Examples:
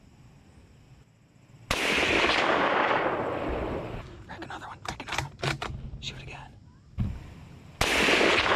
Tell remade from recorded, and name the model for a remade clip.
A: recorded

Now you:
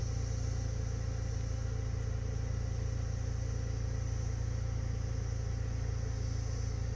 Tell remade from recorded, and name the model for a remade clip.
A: recorded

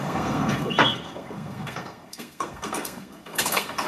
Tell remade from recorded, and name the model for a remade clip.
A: remade, codec, SNAC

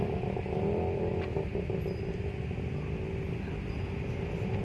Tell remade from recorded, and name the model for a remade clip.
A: recorded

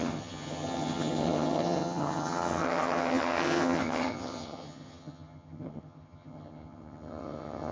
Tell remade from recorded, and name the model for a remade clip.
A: remade, vocoder, HiFi-GAN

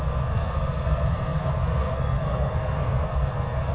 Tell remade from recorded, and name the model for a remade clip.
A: remade, codec, SNAC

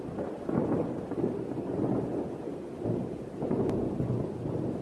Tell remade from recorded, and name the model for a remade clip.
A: recorded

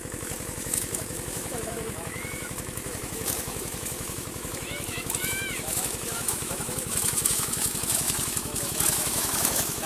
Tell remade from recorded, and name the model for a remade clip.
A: remade, autoencoder, DAC-VAE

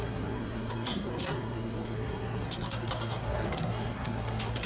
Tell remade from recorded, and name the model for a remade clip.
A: remade, codec, SNAC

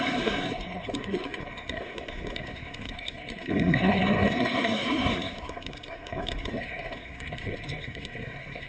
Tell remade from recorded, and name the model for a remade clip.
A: remade, codec, SNAC